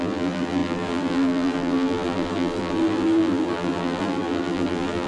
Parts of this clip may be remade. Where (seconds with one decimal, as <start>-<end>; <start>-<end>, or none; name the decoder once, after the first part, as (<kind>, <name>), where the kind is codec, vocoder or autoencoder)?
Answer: 0.0-5.1 (vocoder, BigVGAN v2)